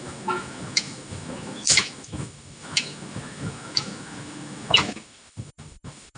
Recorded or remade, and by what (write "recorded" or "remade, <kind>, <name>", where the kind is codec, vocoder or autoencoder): remade, autoencoder, DAC-VAE